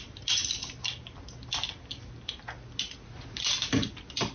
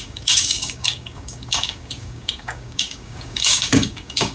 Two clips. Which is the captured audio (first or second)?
first